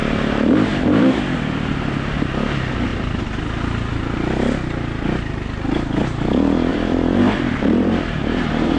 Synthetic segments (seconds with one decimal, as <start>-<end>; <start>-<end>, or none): 0.0-1.2; 6.7-8.8

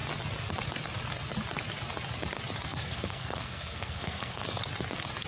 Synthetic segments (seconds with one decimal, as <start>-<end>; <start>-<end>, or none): 2.7-4.6